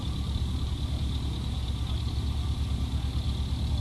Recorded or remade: recorded